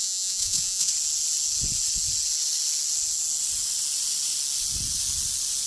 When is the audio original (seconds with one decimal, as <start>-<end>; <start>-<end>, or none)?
0.9-5.7